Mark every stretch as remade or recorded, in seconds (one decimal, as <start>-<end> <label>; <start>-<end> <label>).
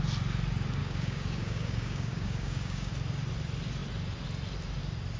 0.0-0.8 recorded; 0.8-2.9 remade; 2.9-5.2 recorded